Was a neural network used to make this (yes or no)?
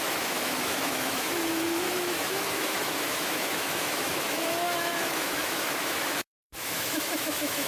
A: yes